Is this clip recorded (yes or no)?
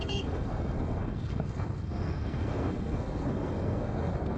no